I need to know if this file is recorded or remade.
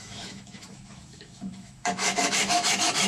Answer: remade